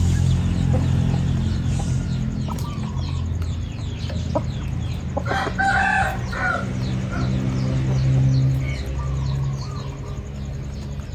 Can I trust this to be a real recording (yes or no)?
yes